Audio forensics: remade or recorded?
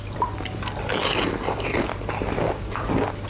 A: recorded